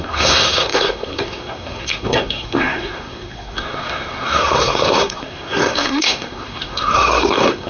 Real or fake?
fake